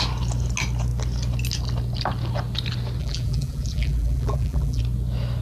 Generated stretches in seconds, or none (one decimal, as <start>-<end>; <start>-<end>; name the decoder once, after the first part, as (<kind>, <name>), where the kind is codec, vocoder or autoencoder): 3.0-4.8 (vocoder, BigVGAN v2)